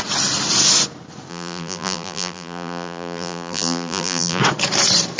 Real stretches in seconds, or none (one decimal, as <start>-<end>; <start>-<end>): 0.0-1.3; 4.4-5.2